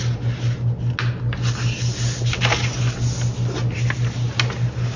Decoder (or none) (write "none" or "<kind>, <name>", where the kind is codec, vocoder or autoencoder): none